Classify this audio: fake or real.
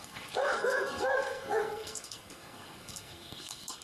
fake